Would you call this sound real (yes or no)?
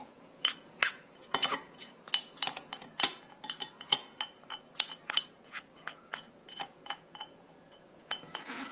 no